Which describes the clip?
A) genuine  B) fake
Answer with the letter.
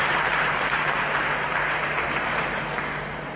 B